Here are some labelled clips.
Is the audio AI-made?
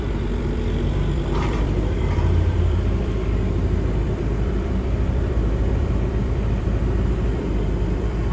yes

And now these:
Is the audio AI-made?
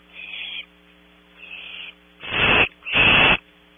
no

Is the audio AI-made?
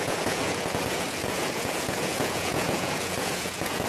yes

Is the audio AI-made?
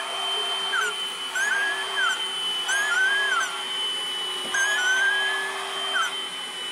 no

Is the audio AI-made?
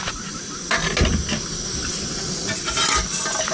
no